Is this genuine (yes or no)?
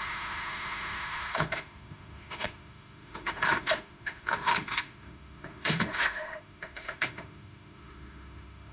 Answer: no